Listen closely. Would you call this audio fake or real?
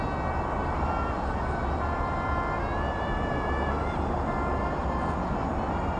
real